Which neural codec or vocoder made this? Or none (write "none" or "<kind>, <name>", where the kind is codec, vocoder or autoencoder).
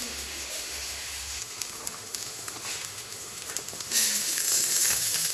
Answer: autoencoder, DAC-VAE